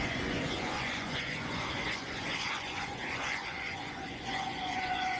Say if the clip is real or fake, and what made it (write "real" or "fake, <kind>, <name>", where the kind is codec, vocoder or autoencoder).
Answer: fake, vocoder, Vocos